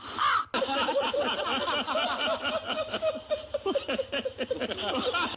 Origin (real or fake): real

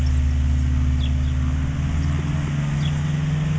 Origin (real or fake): real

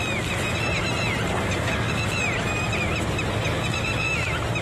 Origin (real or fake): real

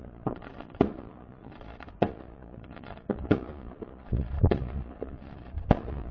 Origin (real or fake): fake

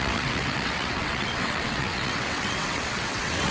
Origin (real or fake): fake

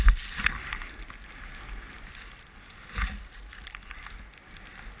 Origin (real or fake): real